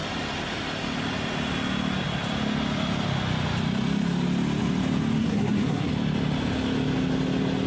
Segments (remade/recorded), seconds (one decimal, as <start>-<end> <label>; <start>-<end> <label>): 0.0-5.2 recorded; 5.2-5.9 remade; 5.9-7.7 recorded